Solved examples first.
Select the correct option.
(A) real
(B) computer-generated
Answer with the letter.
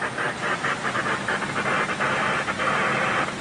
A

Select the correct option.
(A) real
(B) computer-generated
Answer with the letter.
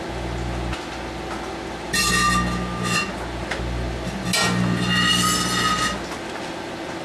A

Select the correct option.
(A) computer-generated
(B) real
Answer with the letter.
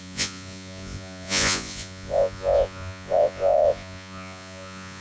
A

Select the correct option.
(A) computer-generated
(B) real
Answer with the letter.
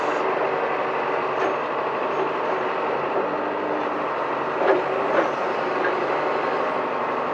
B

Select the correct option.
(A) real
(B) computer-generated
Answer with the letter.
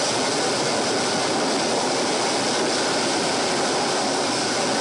A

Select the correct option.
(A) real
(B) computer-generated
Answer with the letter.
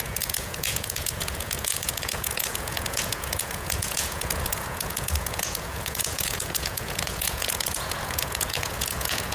B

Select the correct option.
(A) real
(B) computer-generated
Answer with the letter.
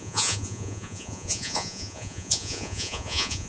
B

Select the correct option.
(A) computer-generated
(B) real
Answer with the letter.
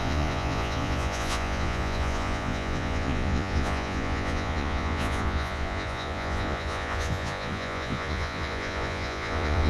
A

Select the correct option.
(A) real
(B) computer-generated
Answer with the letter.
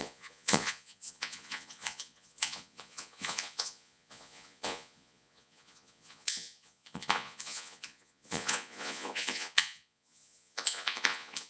B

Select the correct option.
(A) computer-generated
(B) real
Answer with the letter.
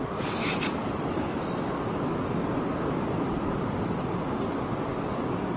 B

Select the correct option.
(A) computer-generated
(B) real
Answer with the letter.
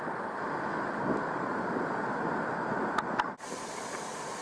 B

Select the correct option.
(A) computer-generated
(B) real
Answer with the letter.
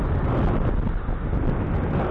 B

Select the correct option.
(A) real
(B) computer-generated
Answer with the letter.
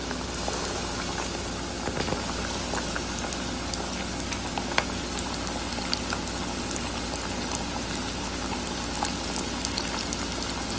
A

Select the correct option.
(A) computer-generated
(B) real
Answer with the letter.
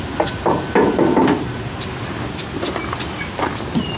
B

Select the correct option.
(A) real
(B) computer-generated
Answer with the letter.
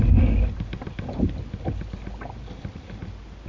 A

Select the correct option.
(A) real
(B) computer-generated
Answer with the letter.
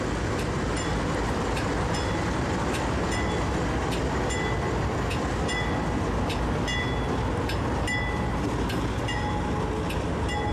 A